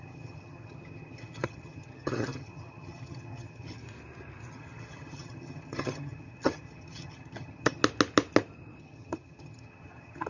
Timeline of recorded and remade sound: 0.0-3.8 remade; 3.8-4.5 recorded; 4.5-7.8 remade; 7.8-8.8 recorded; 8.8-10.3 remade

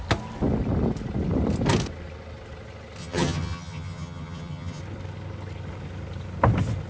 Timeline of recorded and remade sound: 0.0-3.0 recorded; 3.0-4.8 remade; 4.8-6.9 recorded